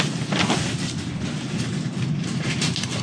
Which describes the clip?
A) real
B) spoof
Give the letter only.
A